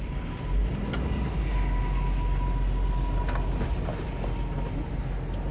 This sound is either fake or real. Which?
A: real